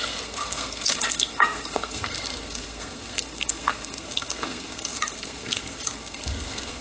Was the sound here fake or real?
fake